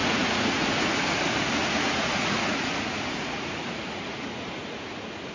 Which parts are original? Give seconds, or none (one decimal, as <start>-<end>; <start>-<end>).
none